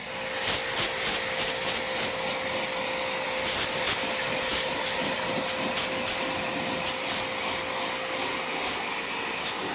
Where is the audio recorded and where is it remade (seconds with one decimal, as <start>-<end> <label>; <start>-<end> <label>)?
0.0-9.7 recorded

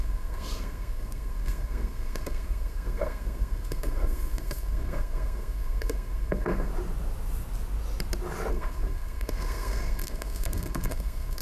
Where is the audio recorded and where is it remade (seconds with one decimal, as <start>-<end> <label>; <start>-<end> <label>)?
0.0-6.7 remade; 6.7-8.5 recorded; 8.5-11.4 remade

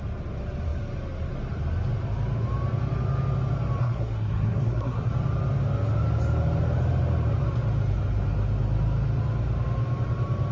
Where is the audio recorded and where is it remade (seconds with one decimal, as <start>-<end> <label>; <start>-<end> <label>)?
0.0-3.8 recorded; 3.8-5.1 remade; 5.1-10.5 recorded

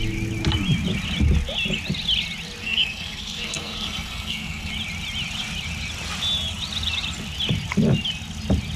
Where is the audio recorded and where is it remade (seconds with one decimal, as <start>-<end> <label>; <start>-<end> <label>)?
0.0-2.6 recorded; 2.6-4.7 remade; 4.7-8.8 recorded

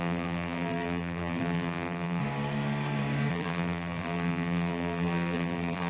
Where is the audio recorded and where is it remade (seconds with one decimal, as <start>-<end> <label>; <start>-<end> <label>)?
0.0-2.2 remade; 2.2-3.3 recorded; 3.3-5.9 remade